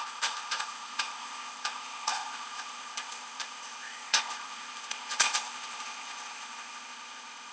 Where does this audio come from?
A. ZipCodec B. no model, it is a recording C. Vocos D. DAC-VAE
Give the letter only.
A